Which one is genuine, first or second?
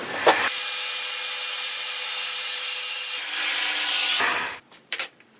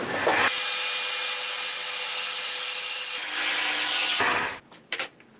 second